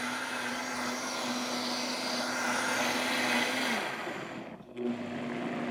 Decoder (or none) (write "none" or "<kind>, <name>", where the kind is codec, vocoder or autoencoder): none